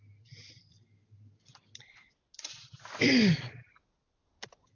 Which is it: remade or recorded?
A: recorded